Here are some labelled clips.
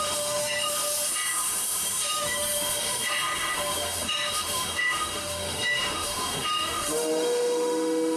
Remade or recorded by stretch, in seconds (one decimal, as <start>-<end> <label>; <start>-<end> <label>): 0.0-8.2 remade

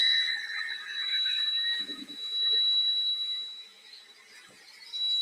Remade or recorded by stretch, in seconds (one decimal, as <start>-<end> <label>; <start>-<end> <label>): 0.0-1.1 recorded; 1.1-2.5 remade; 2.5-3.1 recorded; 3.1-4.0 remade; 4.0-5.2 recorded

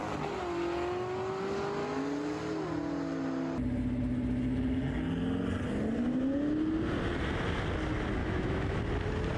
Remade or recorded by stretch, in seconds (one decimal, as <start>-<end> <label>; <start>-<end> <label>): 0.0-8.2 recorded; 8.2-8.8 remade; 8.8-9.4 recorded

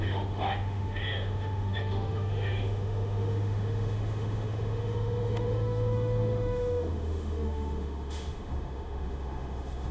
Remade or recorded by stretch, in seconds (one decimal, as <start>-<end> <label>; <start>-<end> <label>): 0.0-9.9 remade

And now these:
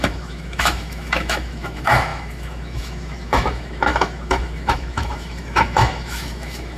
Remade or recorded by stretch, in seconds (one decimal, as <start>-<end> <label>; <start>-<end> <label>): 0.0-6.8 remade